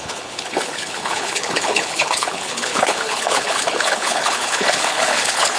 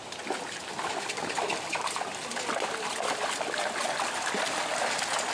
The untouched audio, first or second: second